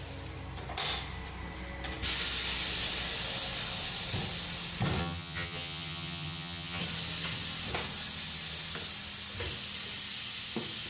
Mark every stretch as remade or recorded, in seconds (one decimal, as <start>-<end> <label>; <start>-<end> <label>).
0.0-5.0 recorded; 5.0-6.8 remade; 6.8-10.9 recorded